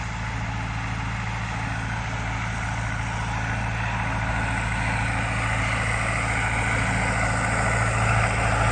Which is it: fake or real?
real